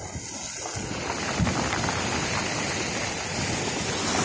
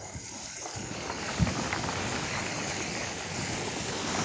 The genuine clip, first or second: first